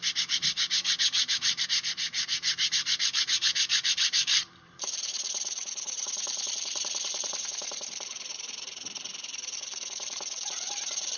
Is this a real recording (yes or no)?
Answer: no